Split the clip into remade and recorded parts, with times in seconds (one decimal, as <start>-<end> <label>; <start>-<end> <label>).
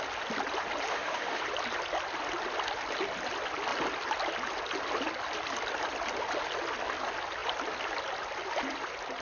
0.0-0.9 recorded; 0.9-1.4 remade; 1.4-9.2 recorded